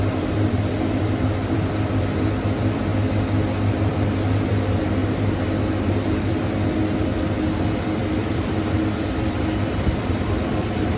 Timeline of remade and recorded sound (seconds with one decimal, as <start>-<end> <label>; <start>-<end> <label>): 0.0-2.9 remade; 2.9-3.7 recorded; 3.7-5.0 remade; 5.0-5.9 recorded; 5.9-11.0 remade